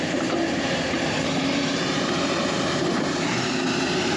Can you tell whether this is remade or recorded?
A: remade